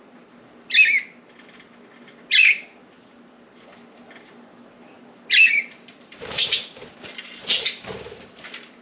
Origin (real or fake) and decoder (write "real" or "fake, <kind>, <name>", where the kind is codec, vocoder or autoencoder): real